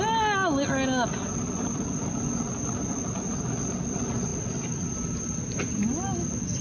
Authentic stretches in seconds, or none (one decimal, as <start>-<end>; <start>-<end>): 0.0-6.6